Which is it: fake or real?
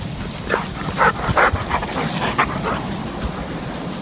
real